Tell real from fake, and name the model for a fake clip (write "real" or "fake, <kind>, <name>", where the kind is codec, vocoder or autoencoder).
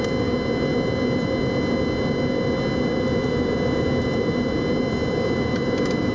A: real